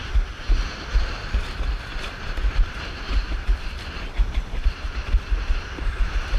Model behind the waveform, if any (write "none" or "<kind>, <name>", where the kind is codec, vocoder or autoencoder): vocoder, BigVGAN v2